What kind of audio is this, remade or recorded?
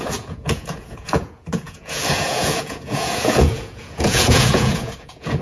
remade